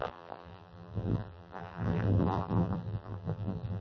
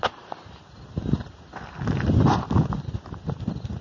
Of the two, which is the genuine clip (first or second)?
second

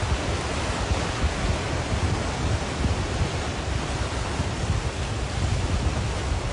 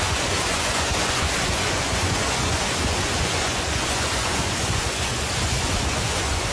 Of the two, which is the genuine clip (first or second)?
first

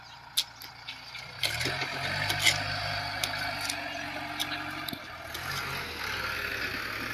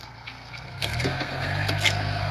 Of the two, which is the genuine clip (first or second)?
first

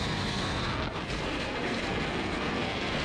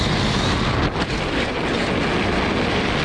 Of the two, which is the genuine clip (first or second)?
second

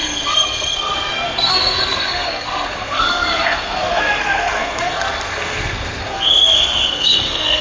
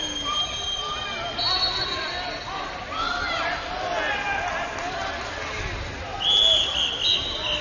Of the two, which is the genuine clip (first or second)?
second